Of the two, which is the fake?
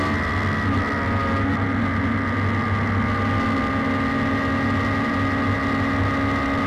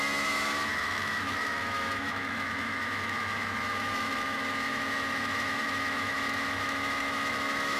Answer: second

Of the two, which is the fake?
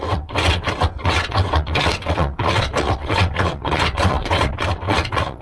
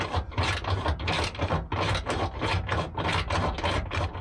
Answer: first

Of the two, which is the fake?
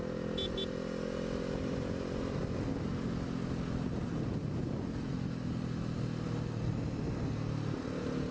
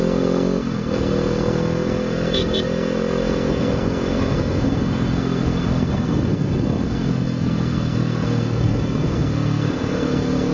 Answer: second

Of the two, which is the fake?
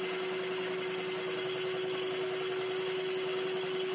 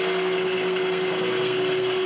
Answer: second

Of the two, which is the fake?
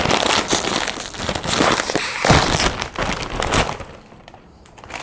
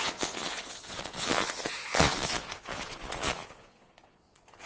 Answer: second